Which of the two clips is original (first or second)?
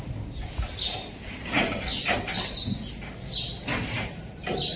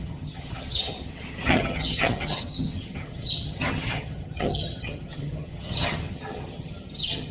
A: first